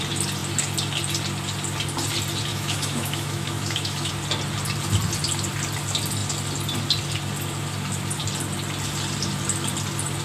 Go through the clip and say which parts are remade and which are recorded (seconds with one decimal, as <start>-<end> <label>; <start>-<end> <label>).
0.0-2.5 recorded; 2.5-4.1 remade; 4.1-10.2 recorded